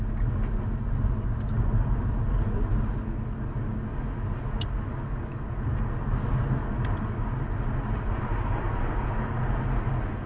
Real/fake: real